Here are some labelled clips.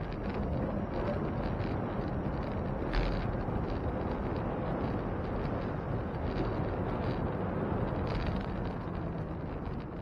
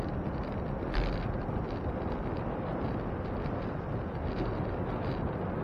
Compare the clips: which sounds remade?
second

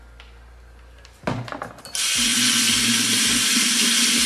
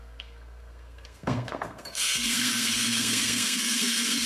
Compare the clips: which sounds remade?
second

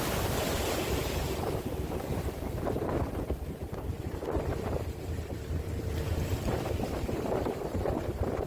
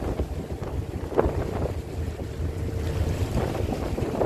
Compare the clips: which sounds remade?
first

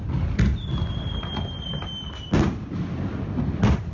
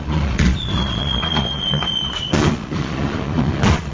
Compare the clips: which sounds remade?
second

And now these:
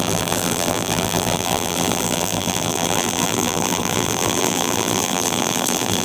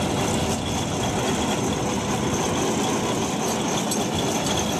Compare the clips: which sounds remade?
first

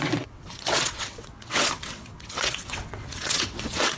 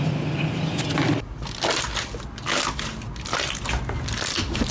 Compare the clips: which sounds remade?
first